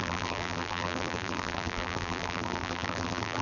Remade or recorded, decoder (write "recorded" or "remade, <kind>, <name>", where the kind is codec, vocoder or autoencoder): remade, vocoder, BigVGAN v2